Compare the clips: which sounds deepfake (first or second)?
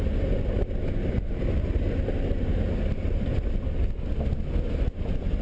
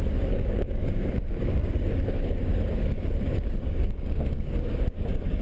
second